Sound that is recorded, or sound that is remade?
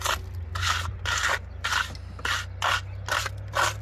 recorded